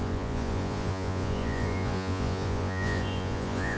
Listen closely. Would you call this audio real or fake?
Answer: fake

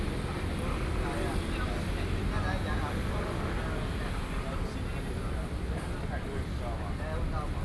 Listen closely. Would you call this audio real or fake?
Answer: real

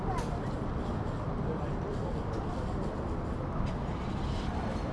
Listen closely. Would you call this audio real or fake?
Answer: real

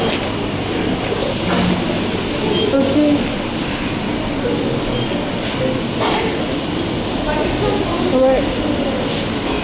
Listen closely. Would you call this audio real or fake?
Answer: real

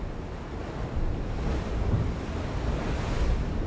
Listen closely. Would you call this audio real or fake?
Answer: real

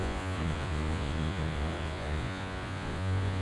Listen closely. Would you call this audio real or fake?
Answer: fake